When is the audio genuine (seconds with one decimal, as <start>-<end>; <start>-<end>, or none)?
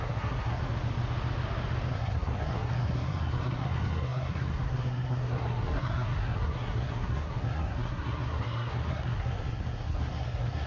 0.6-1.9